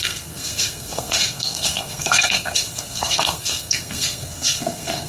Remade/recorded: remade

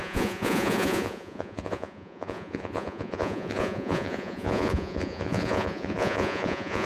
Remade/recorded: remade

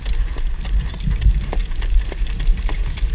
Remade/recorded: recorded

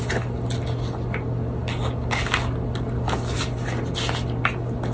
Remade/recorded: recorded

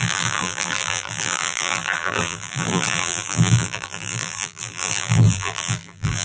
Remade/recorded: remade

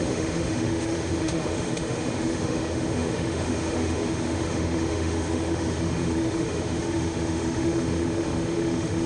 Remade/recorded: remade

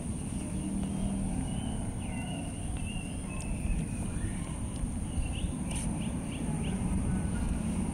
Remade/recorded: recorded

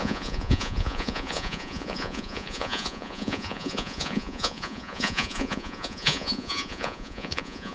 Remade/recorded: remade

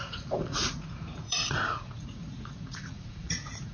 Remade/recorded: remade